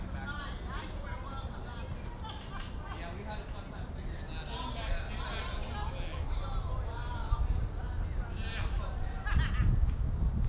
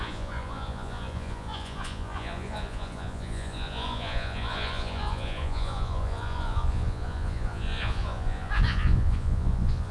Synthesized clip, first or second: second